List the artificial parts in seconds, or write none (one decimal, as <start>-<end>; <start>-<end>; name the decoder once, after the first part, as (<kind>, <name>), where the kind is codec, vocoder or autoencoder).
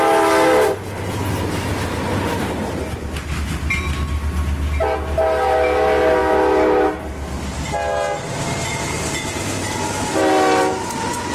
none